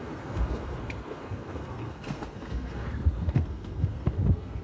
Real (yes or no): no